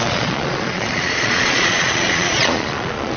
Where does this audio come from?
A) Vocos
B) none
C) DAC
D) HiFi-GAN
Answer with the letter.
A